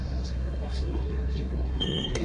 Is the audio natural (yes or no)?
no